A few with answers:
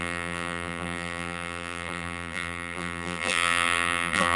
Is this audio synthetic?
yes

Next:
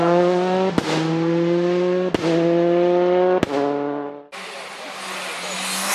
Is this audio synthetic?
no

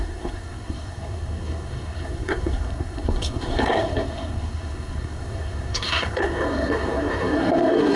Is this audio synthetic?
yes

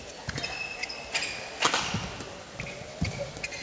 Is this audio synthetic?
no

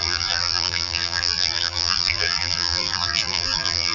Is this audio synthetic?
yes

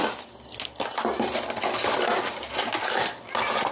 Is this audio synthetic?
no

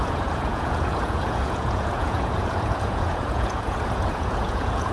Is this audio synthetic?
yes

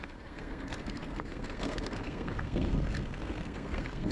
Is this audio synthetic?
yes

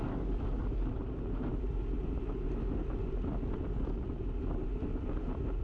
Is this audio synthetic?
no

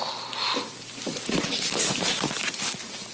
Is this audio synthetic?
no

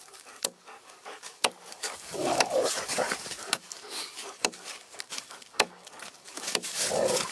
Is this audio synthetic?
yes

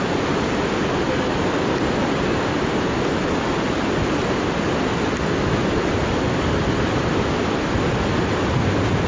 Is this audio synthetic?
no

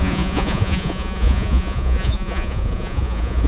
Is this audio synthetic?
yes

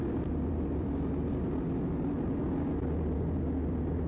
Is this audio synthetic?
no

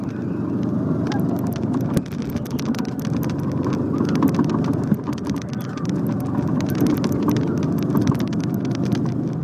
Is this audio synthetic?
yes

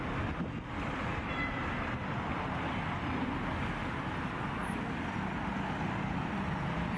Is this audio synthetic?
no